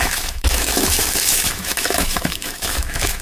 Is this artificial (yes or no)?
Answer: yes